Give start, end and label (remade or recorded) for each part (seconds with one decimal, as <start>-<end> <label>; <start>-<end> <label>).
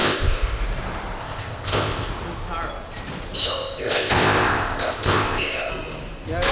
0.0-0.6 remade; 0.6-1.2 recorded; 1.2-2.1 remade; 2.1-3.4 recorded; 3.4-5.7 remade; 5.7-6.5 recorded